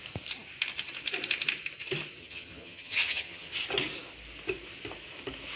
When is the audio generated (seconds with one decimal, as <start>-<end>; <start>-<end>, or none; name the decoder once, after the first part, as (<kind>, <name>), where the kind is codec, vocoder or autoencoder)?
2.2-3.5 (vocoder, HiFi-GAN)